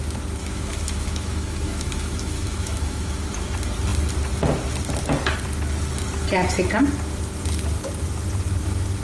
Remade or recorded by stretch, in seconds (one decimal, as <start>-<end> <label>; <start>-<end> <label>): 0.0-0.4 recorded; 0.4-3.3 remade; 3.3-9.0 recorded